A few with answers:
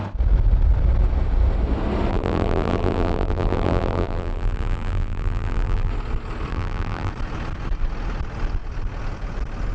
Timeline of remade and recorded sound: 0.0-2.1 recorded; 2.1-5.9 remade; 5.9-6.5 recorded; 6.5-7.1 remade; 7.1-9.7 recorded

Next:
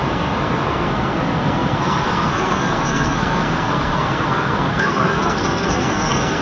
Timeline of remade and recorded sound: 0.0-6.4 remade

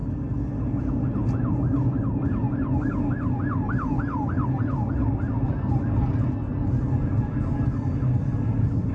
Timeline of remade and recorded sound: 0.0-8.9 recorded

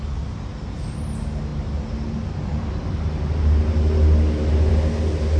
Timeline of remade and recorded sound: 0.0-5.4 recorded